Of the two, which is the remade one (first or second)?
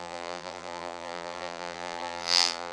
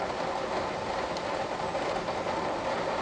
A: first